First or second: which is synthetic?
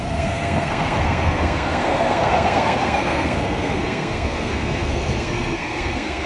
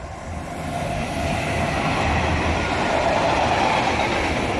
first